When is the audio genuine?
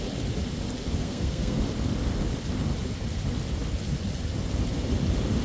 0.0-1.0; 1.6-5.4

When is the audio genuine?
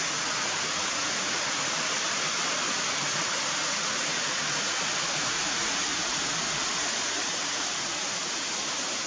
1.9-2.9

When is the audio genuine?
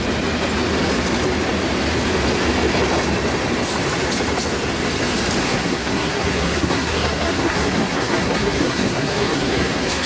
0.0-5.4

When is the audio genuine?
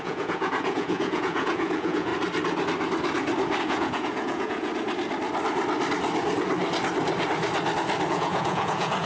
2.1-3.6; 4.7-8.1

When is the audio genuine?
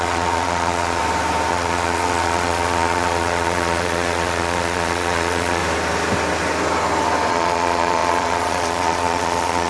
1.0-1.5; 5.6-7.3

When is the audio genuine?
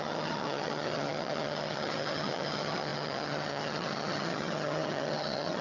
none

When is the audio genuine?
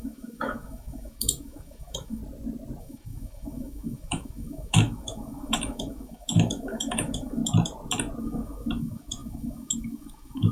2.2-2.8; 7.4-8.2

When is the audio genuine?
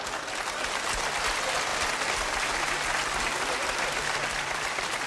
0.0-5.1